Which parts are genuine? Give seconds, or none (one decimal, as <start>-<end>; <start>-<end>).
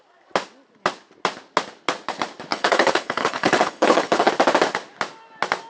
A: 0.0-2.5; 4.3-5.7